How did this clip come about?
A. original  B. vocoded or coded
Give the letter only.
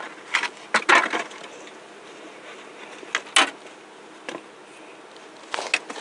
A